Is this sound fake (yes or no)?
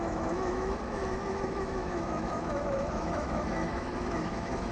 yes